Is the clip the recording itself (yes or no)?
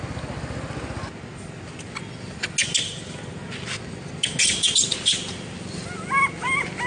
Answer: yes